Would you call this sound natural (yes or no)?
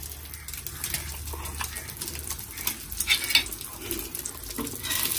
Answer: yes